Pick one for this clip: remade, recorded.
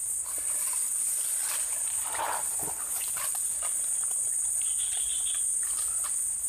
remade